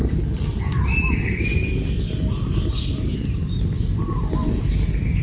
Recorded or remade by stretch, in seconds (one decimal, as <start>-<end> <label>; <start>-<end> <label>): 0.0-5.2 recorded